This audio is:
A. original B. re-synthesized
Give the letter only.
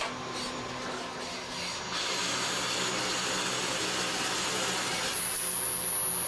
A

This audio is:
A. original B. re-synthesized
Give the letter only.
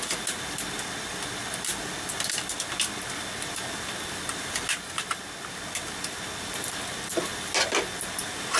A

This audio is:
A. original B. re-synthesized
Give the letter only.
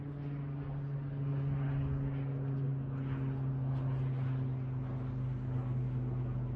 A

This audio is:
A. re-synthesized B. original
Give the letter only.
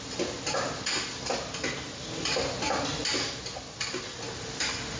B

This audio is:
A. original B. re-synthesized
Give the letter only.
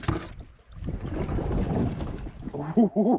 A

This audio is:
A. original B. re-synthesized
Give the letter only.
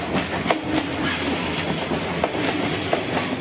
A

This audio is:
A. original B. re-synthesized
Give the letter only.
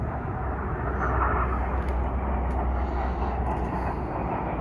A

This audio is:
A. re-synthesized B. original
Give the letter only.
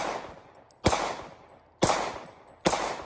B